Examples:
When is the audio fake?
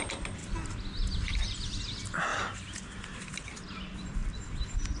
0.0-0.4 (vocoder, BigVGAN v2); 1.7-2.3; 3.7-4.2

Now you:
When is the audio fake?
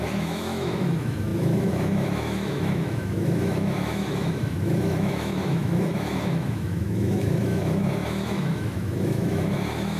0.0-10.0 (autoencoder, DAC-VAE)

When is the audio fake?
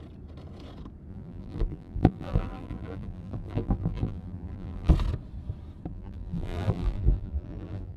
1.1-4.9 (vocoder, BigVGAN v2); 5.9-8.0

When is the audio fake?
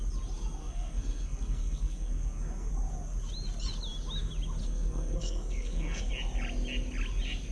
0.6-2.7 (codec, SNAC); 4.6-6.1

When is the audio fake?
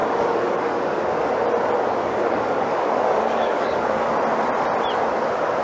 0.0-1.0 (codec, DAC); 2.0-4.1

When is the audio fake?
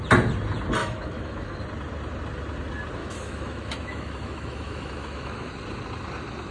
0.8-1.6 (autoencoder, DAC-VAE); 3.0-5.5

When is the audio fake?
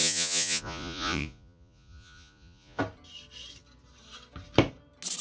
0.0-2.8 (vocoder, Vocos)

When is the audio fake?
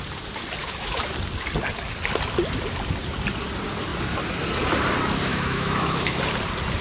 0.6-1.1 (autoencoder, DAC-VAE); 5.3-6.2